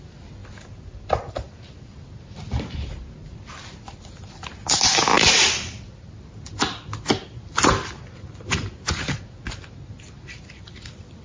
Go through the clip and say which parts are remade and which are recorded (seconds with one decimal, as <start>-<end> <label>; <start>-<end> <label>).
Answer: 0.0-11.2 recorded